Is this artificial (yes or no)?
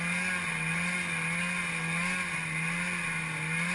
no